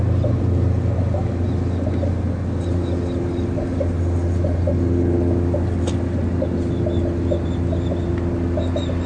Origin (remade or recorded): recorded